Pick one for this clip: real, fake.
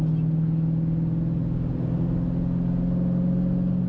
real